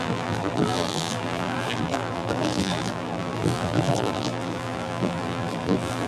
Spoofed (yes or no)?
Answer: yes